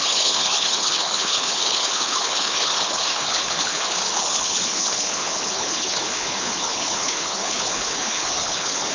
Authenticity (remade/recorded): remade